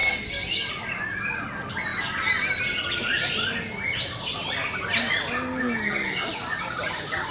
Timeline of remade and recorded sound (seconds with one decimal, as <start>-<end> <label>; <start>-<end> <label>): 0.0-0.7 remade; 0.7-7.3 recorded